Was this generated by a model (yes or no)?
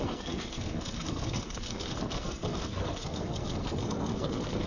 yes